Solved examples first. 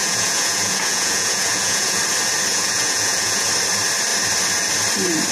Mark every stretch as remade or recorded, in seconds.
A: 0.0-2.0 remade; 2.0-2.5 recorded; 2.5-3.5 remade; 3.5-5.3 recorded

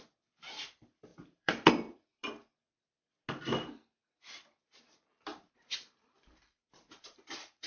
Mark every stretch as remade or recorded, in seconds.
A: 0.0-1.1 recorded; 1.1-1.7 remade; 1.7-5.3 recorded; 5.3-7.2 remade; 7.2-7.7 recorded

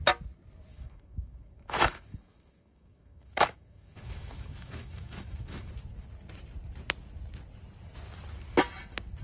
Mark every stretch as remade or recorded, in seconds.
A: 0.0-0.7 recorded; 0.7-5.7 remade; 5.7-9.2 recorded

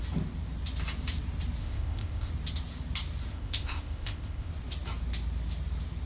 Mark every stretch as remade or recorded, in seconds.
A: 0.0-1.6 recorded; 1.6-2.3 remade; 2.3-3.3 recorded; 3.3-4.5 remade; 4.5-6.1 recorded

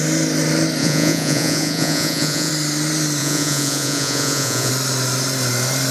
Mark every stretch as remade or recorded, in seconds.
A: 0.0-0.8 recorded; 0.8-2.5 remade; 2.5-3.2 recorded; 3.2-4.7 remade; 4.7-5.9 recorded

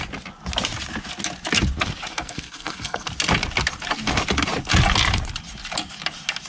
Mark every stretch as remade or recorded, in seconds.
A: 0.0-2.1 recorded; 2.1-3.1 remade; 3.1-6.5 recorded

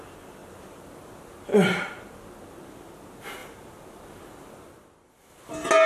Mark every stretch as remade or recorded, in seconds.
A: 0.0-5.9 recorded

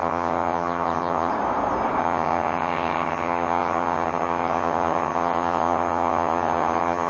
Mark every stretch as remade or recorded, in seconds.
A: 0.0-1.3 remade; 1.3-2.0 recorded; 2.0-7.1 remade